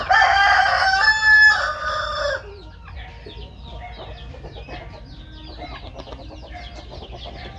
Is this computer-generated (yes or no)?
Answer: no